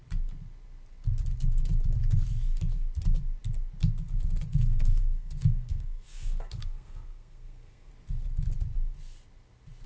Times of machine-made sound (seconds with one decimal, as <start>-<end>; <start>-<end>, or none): 4.5-7.9